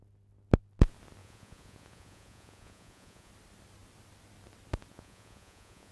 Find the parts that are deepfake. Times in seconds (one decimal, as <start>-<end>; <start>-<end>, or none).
1.2-3.3; 4.9-5.9